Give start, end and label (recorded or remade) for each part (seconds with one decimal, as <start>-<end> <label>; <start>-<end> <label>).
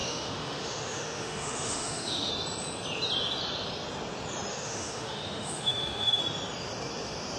0.0-2.3 remade; 2.3-4.5 recorded; 4.5-6.2 remade; 6.2-7.4 recorded